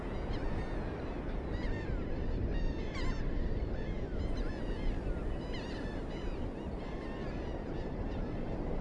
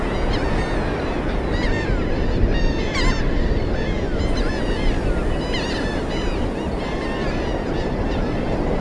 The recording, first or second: second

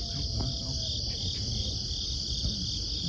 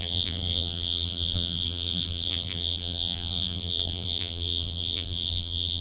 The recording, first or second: first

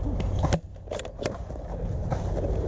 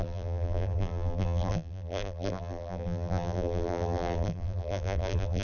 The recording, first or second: first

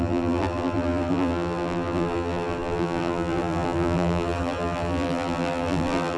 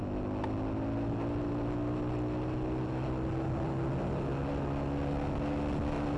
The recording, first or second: second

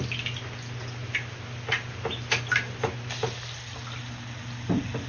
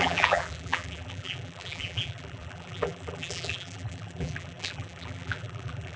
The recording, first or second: first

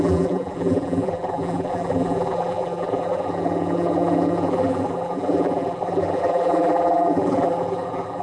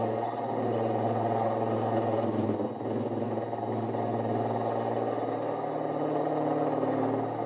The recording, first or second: second